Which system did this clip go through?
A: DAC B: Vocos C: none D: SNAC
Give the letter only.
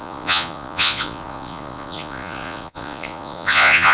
B